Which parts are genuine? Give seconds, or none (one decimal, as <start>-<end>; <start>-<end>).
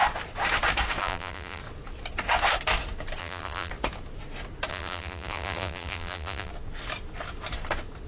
0.0-1.0; 1.6-3.2; 3.7-4.7; 6.5-8.1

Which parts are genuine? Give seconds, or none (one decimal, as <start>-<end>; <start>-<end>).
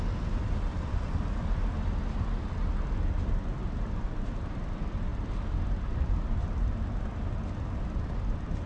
none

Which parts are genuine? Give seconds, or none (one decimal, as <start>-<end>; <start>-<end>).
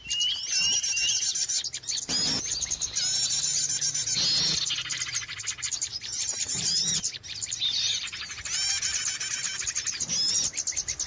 0.0-11.1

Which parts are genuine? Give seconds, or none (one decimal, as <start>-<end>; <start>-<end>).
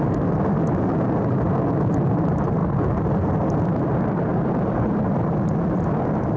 0.0-4.3; 5.2-6.4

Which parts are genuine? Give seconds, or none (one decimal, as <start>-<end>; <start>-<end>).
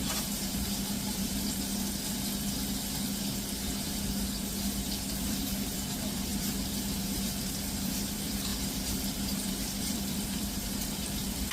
1.7-5.2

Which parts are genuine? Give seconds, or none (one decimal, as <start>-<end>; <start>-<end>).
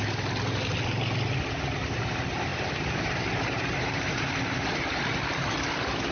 0.0-2.5; 5.0-6.1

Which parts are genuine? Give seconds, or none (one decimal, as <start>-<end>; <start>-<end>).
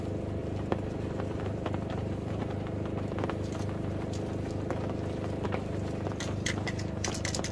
0.0-0.4; 2.4-7.5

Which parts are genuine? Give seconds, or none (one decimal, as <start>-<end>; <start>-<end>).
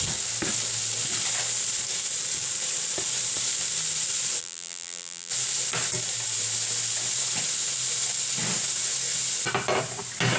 0.0-4.4; 5.3-10.4